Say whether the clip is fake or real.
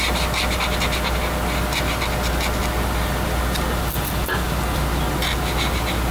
real